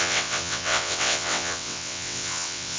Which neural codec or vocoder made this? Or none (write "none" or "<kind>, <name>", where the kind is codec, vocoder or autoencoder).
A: vocoder, WaveNeXt